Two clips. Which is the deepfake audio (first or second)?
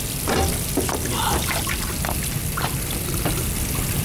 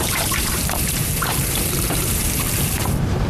second